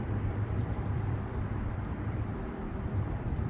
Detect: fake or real fake